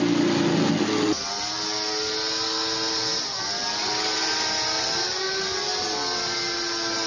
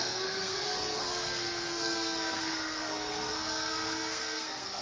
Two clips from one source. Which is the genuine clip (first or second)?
first